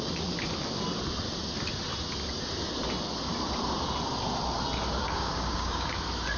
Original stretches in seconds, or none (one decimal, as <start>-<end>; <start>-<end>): 0.0-5.0; 5.9-6.4